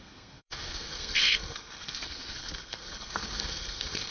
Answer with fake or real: fake